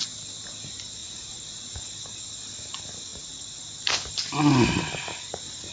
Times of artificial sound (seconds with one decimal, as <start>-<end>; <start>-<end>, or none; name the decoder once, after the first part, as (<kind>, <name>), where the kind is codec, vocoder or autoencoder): 1.0-1.6 (vocoder, Vocos); 3.1-3.6